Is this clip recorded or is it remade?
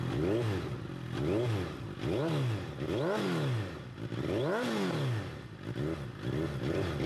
recorded